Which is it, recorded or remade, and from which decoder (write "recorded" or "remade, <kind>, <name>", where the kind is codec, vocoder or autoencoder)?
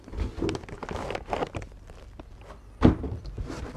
recorded